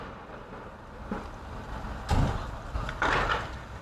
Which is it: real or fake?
real